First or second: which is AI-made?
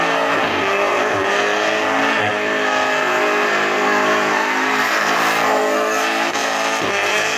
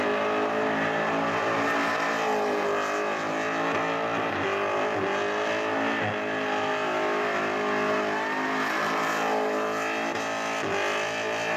first